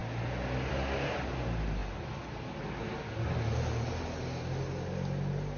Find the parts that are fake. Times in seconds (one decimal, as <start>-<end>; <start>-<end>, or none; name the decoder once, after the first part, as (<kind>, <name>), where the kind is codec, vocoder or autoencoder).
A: none